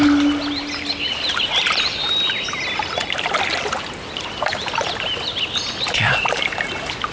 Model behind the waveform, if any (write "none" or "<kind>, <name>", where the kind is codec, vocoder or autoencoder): none